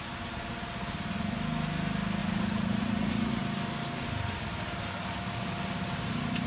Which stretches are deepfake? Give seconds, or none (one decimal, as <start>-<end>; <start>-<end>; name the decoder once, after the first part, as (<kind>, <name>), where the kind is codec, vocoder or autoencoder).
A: 2.2-3.4 (vocoder, Vocos)